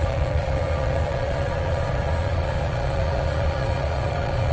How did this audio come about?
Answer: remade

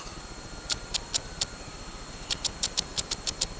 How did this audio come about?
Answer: remade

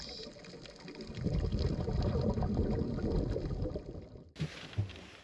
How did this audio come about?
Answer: recorded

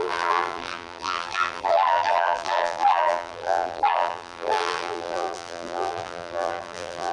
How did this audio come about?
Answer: remade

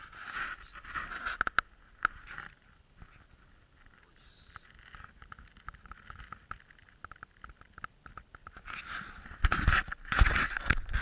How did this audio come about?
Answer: recorded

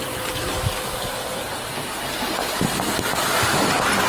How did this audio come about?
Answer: recorded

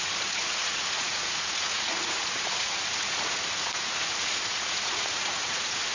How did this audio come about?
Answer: remade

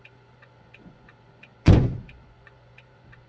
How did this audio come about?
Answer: remade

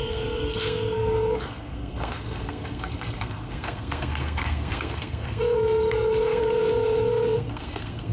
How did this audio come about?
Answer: remade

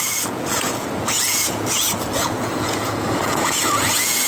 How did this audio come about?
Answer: remade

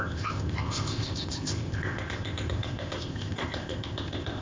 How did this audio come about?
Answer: remade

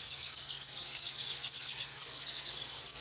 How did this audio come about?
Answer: remade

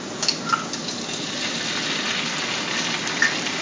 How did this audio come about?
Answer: recorded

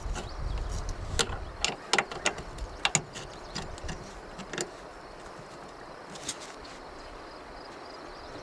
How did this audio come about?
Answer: recorded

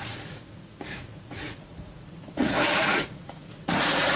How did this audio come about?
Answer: remade